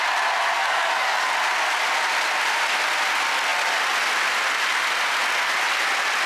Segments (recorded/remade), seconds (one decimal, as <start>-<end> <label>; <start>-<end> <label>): 0.0-0.6 recorded; 0.6-1.3 remade; 1.3-6.3 recorded